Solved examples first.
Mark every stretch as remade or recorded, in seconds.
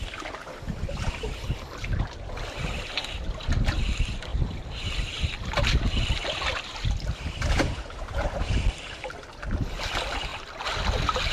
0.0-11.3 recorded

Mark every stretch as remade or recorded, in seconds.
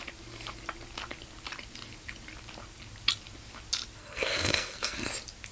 0.0-4.0 recorded; 4.0-5.1 remade; 5.1-5.5 recorded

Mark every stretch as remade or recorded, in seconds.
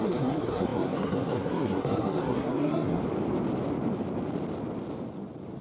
0.0-3.0 remade; 3.0-5.6 recorded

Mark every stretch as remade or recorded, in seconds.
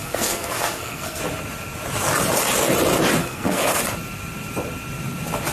0.0-1.2 remade; 1.2-3.2 recorded; 3.2-3.8 remade; 3.8-5.5 recorded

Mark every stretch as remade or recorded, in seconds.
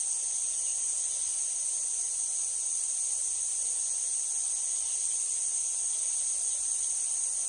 0.0-7.5 recorded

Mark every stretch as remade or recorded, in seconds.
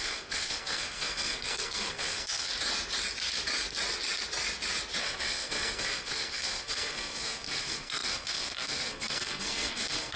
0.0-2.5 remade; 2.5-5.0 recorded; 5.0-10.2 remade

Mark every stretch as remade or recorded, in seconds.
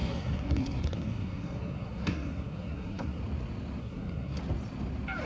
0.0-3.2 remade; 3.2-3.8 recorded; 3.8-4.4 remade; 4.4-5.3 recorded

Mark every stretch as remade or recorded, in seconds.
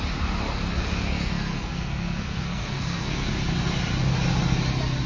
0.0-0.7 recorded; 0.7-3.3 remade; 3.3-5.1 recorded